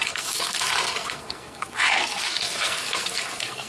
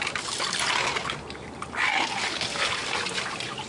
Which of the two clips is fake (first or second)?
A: first